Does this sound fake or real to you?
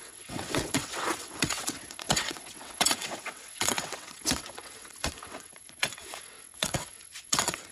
fake